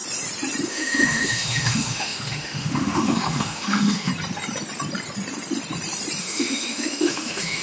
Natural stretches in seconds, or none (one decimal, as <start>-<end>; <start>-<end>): 0.0-0.7; 4.1-6.2